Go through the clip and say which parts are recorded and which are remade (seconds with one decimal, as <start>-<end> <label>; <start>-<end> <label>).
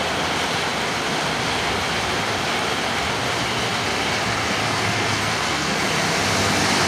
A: 0.0-4.6 recorded; 4.6-5.8 remade; 5.8-6.9 recorded